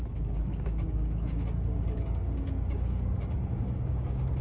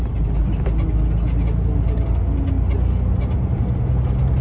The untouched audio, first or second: second